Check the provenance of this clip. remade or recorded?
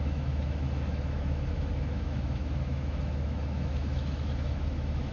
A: remade